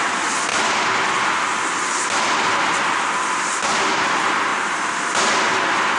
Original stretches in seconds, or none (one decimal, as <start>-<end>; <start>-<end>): 0.0-0.5; 4.1-6.0